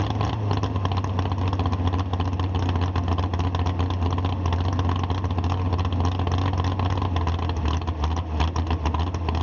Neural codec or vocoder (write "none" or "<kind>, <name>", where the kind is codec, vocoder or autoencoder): none